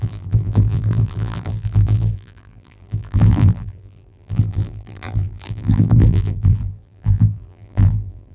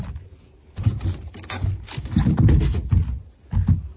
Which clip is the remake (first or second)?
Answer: first